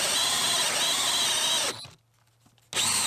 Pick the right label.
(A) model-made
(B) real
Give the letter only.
B